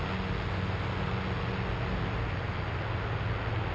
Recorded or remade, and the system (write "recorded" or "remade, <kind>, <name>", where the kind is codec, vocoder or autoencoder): recorded